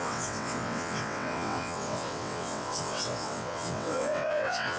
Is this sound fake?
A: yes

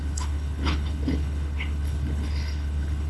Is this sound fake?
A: yes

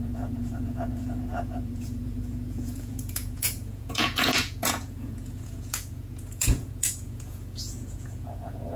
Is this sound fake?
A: yes